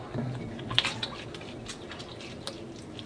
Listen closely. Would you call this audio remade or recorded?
recorded